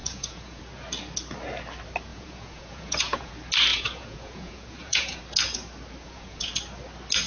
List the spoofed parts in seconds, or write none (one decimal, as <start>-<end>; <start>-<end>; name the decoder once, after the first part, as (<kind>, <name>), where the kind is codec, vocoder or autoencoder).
0.0-0.6 (vocoder, Vocos); 2.1-3.3; 3.7-5.2; 6.0-6.5

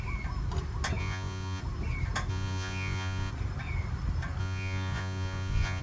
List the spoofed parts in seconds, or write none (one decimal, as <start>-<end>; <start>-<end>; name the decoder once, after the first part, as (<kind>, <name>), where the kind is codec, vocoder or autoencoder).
1.0-1.6 (vocoder, Vocos); 2.3-3.3; 4.4-5.8

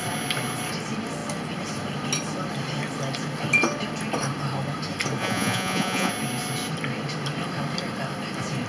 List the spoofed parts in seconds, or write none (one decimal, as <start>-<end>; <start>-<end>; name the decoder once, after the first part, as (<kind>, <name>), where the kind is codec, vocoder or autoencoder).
5.2-6.1 (vocoder, Vocos)